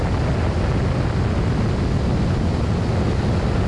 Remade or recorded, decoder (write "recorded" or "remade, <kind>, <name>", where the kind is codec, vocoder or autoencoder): recorded